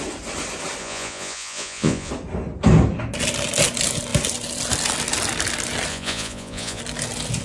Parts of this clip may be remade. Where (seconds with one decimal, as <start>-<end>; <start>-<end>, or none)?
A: 0.8-2.1; 5.9-6.8